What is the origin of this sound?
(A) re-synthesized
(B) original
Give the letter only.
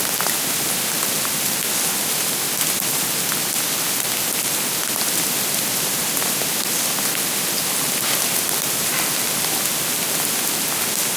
B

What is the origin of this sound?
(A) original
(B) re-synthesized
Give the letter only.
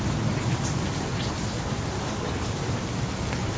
A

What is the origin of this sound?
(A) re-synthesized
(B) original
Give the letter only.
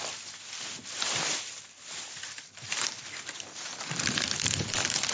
B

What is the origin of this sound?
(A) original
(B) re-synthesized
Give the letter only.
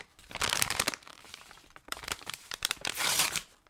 B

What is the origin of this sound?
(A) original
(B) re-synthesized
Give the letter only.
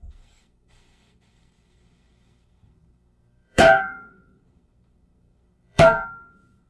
B